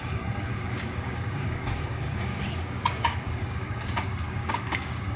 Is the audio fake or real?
fake